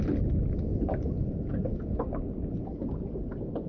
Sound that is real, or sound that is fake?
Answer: real